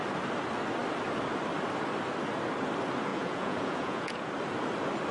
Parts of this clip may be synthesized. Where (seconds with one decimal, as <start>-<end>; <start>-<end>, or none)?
3.1-4.3